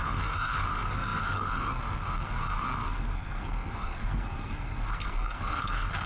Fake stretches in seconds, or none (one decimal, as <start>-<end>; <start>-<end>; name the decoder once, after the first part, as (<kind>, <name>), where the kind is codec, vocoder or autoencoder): 0.0-6.1 (codec, SNAC)